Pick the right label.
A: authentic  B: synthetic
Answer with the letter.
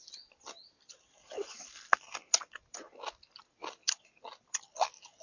A